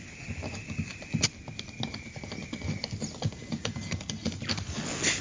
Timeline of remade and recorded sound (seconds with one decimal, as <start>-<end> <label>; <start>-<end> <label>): 0.0-5.2 recorded